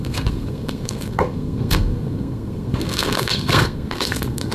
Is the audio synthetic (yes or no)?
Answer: yes